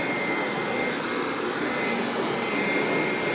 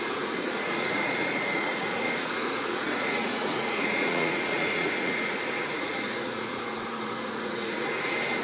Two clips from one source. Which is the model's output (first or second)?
second